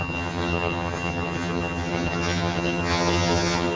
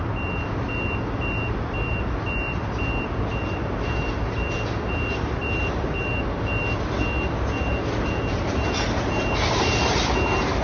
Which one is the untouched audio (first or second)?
second